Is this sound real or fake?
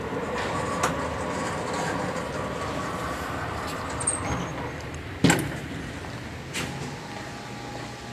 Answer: real